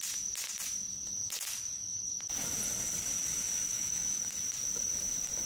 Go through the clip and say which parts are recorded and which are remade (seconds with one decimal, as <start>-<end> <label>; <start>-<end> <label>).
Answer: 0.0-3.7 recorded; 3.7-4.2 remade; 4.2-5.5 recorded